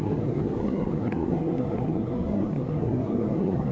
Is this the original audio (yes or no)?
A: no